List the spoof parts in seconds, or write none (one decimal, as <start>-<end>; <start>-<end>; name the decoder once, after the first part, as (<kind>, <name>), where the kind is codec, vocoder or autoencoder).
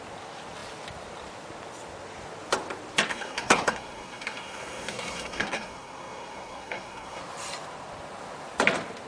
3.1-7.2 (codec, SNAC)